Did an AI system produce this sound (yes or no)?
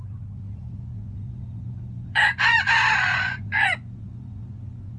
yes